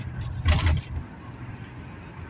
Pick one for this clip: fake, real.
real